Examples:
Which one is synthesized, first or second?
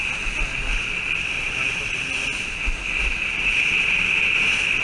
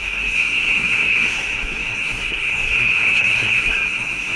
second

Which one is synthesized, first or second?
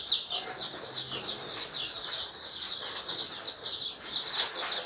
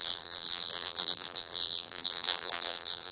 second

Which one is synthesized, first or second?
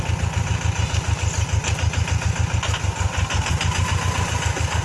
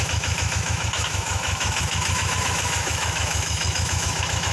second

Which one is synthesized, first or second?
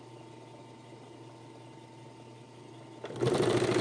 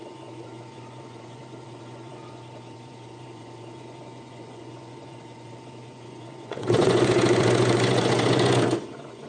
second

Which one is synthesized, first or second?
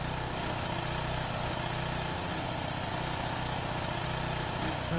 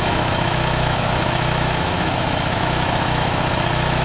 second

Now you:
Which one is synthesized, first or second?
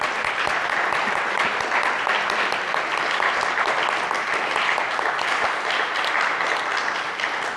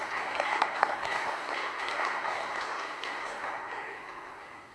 second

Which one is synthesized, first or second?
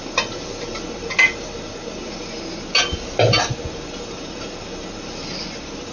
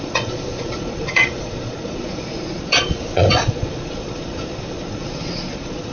second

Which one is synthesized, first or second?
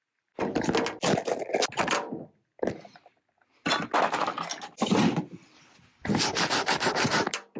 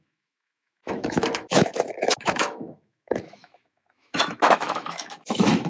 second